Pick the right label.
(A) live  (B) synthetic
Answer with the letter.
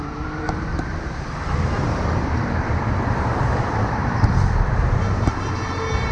B